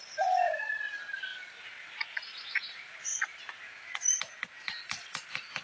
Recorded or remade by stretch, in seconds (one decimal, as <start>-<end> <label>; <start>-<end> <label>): 0.0-1.3 recorded; 1.3-2.4 remade; 2.4-3.1 recorded; 3.1-5.6 remade